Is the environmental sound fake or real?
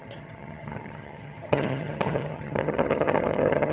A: fake